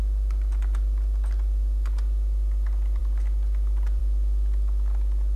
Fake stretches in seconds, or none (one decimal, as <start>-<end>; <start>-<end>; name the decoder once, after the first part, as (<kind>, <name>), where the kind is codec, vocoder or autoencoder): none

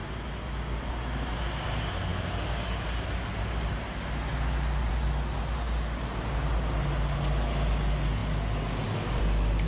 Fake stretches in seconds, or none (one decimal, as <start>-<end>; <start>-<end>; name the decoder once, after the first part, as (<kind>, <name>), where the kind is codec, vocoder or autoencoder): none

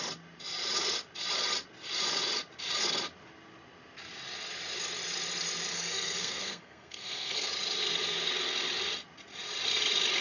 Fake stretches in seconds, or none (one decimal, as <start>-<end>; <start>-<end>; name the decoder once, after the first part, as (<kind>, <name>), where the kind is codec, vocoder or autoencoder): 5.7-7.5 (codec, SNAC)

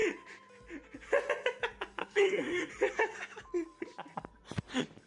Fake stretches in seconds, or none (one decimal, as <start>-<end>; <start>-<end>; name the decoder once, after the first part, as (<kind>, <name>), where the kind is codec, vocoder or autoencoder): 2.0-2.7 (codec, SNAC)